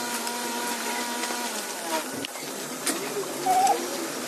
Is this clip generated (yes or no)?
no